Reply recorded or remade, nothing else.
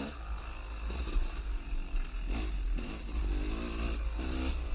recorded